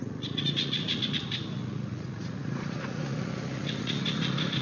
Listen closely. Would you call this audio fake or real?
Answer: fake